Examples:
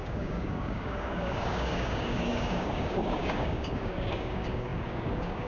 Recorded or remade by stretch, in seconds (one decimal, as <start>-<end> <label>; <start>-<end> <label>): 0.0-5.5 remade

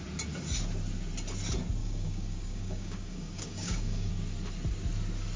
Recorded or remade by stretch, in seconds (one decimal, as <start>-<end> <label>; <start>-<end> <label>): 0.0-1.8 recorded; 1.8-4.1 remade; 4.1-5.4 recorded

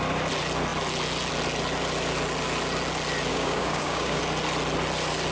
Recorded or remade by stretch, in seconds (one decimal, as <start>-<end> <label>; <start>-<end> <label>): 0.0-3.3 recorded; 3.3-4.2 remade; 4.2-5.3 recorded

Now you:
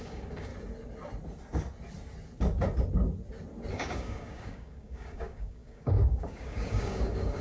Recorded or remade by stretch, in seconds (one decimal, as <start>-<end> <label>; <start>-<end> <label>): 0.0-0.5 remade; 0.5-3.7 recorded; 3.7-7.4 remade

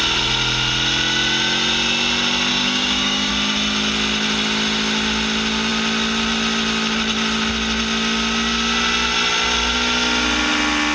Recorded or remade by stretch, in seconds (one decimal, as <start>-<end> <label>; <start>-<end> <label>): 0.0-2.5 recorded; 2.5-3.3 remade; 3.3-10.9 recorded

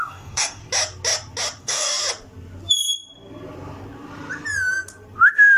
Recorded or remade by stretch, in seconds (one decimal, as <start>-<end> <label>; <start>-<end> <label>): 0.0-0.6 remade; 0.6-1.6 recorded; 1.6-2.0 remade; 2.0-5.6 recorded

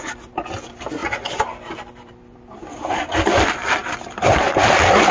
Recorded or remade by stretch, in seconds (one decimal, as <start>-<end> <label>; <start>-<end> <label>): 0.0-5.1 recorded

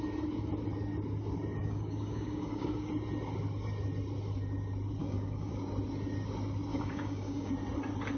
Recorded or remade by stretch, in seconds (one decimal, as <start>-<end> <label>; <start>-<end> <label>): 0.0-1.6 recorded; 1.6-2.9 remade; 2.9-5.0 recorded; 5.0-5.5 remade; 5.5-6.7 recorded; 6.7-7.5 remade; 7.5-8.2 recorded